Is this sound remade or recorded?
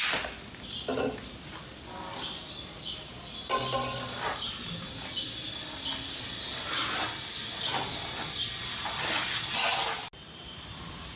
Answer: recorded